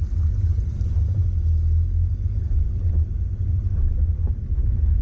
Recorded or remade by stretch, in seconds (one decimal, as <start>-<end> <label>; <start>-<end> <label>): 0.0-5.0 recorded